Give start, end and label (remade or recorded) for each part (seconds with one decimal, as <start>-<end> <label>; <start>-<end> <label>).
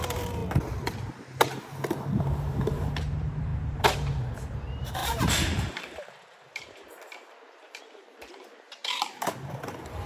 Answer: 0.0-0.4 remade; 0.4-2.2 recorded; 2.2-10.1 remade